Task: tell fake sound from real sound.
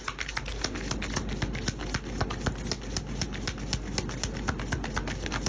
real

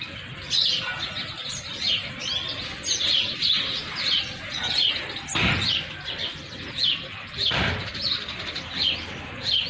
real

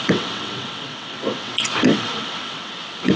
fake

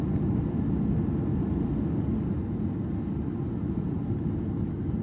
real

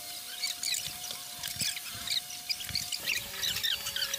real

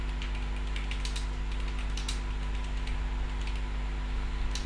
real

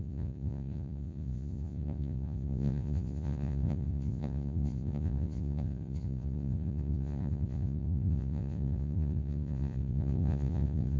fake